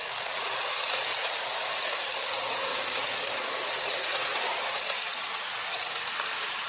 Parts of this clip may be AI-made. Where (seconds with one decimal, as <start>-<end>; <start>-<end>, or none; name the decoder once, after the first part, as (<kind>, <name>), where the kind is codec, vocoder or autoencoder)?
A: 0.0-2.1 (vocoder, Vocos); 2.7-4.5; 5.1-5.8